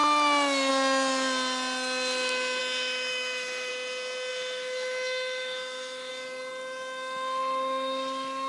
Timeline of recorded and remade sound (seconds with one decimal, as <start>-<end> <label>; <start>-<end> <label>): 0.0-2.6 recorded; 2.6-3.7 remade; 3.7-4.3 recorded; 4.3-6.1 remade; 6.1-8.5 recorded